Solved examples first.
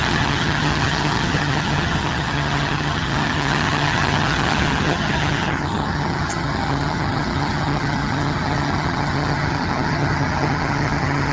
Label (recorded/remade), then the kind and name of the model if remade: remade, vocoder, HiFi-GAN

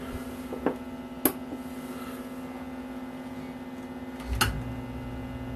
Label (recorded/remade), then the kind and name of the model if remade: recorded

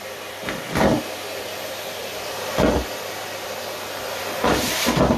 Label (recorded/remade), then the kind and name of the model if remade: recorded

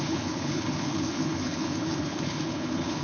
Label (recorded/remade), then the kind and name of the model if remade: remade, codec, HILCodec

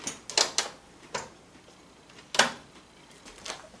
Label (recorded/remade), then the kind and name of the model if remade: recorded